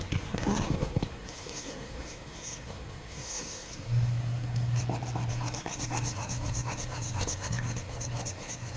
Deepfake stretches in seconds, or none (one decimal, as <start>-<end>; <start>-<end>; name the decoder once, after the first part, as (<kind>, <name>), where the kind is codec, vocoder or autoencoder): 0.0-4.8 (codec, SNAC); 5.3-8.8

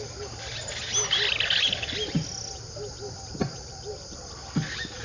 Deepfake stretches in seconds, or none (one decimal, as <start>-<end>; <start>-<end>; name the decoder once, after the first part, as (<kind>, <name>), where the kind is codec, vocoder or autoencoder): none

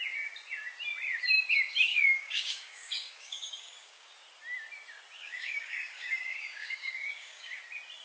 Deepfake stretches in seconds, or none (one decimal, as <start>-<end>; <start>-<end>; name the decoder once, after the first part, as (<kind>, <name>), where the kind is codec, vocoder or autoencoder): 1.9-4.1 (codec, DAC); 5.2-7.6

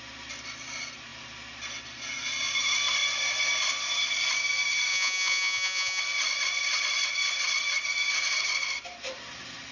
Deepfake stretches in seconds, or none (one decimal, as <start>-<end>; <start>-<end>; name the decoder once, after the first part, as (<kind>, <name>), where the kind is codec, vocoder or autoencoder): 4.9-6.0 (vocoder, Vocos)

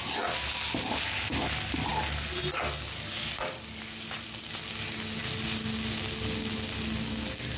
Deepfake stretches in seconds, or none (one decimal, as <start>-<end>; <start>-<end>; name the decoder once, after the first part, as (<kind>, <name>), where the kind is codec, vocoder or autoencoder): none

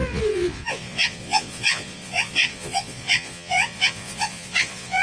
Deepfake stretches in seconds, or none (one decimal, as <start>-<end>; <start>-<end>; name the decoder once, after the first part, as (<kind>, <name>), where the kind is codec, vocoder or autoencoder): 0.0-5.0 (vocoder, Vocos)

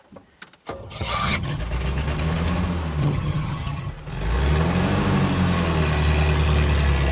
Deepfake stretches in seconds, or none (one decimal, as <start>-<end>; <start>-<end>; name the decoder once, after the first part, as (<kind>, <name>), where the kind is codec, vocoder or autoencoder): 0.8-1.6 (vocoder, HiFi-GAN); 3.0-3.9